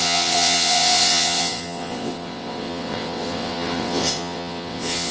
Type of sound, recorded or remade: remade